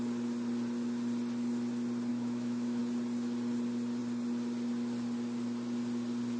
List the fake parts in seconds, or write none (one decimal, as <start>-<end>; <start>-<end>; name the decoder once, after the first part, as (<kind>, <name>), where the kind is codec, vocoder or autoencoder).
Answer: 2.1-2.8 (autoencoder, DAC-VAE)